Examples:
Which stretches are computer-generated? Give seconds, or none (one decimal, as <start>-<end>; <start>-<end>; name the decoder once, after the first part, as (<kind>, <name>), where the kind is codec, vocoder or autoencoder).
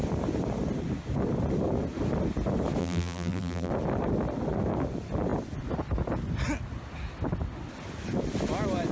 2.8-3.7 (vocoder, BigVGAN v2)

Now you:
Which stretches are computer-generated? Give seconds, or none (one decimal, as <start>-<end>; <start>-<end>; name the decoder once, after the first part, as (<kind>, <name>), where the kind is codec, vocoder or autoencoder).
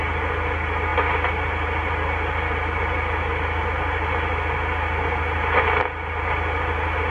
none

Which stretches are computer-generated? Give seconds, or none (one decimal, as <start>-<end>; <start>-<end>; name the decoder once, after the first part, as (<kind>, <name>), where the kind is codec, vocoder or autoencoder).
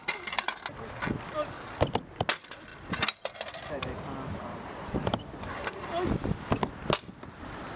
none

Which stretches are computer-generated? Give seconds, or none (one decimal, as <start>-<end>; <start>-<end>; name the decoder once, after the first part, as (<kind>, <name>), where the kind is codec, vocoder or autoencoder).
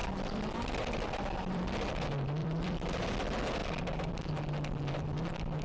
0.0-1.9 (vocoder, BigVGAN v2); 2.4-3.0; 3.6-4.3